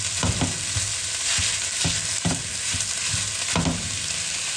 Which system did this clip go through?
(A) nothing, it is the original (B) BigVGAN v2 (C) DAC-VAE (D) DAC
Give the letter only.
A